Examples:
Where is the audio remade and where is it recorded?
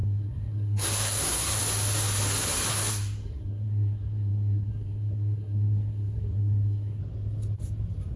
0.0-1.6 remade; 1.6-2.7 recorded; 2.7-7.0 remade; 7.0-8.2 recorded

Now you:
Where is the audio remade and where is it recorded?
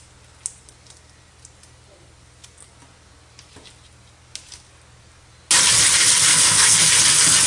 0.0-6.3 recorded; 6.3-6.9 remade; 6.9-7.5 recorded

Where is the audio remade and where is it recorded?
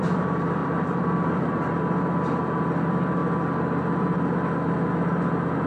0.0-0.6 recorded; 0.6-1.8 remade; 1.8-5.7 recorded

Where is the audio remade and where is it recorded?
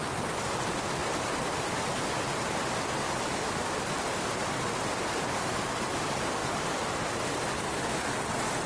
0.0-8.7 recorded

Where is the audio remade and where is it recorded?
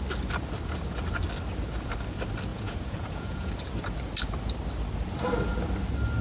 0.0-2.5 recorded; 2.5-3.5 remade; 3.5-6.2 recorded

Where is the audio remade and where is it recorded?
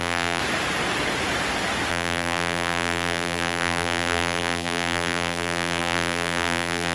0.0-0.4 remade; 0.4-1.9 recorded; 1.9-6.9 remade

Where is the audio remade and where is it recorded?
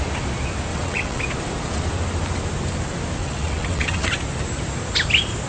0.0-0.7 recorded; 0.7-1.2 remade; 1.2-3.2 recorded; 3.2-4.1 remade; 4.1-5.5 recorded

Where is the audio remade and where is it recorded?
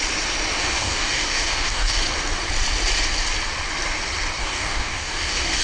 0.0-0.6 recorded; 0.6-2.0 remade; 2.0-4.4 recorded; 4.4-5.6 remade